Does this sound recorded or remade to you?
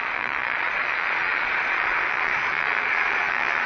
remade